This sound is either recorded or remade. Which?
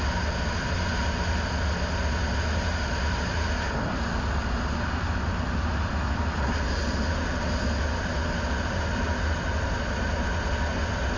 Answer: recorded